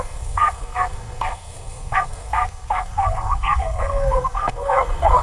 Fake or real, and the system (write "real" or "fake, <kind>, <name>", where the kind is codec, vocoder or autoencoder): fake, codec, SNAC